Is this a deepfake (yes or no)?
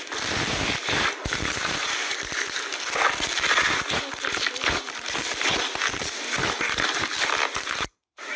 no